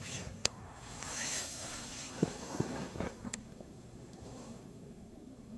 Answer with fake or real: fake